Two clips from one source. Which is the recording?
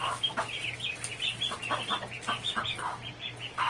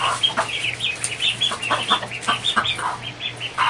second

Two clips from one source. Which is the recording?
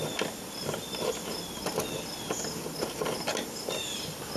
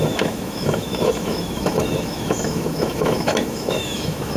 first